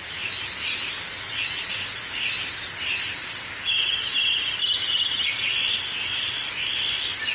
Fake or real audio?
real